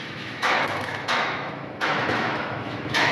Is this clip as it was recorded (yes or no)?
no